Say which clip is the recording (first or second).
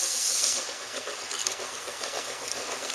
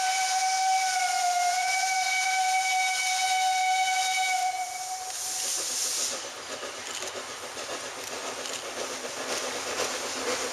second